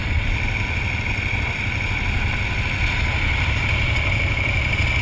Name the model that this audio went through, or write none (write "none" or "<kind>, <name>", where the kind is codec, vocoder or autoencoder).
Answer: none